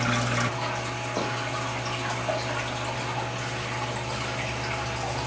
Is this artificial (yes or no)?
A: no